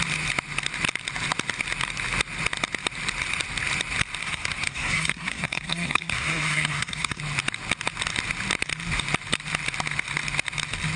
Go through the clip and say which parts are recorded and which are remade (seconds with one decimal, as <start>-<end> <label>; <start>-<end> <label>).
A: 0.0-4.2 recorded; 4.2-7.2 remade; 7.2-11.0 recorded

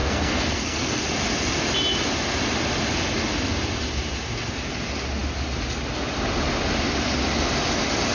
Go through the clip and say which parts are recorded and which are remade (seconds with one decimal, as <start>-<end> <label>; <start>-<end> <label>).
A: 0.0-1.0 remade; 1.0-8.1 recorded

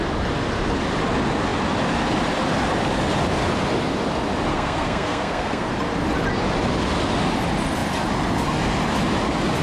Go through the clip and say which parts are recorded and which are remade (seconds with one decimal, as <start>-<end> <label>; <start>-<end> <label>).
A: 0.0-4.5 recorded; 4.5-5.7 remade; 5.7-9.6 recorded

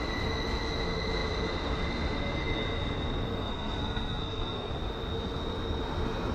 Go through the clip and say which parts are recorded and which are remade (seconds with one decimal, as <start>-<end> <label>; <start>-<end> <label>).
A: 0.0-3.3 recorded; 3.3-4.7 remade; 4.7-6.3 recorded

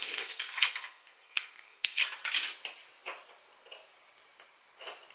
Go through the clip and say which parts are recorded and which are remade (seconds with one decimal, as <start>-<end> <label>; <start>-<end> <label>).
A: 0.0-2.0 remade; 2.0-5.1 recorded